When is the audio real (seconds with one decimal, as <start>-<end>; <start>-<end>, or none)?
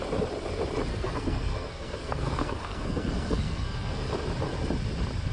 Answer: 0.0-0.9; 4.1-5.3